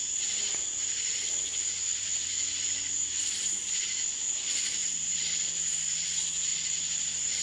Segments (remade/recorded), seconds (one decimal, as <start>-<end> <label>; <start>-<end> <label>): 0.0-7.4 recorded